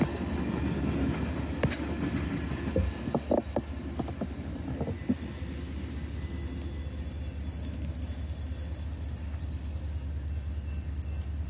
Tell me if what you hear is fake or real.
real